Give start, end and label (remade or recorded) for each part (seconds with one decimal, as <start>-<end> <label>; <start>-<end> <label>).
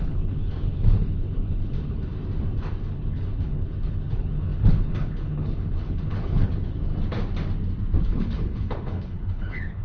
0.0-2.1 remade; 2.1-2.8 recorded; 2.8-6.9 remade; 6.9-8.0 recorded; 8.0-9.8 remade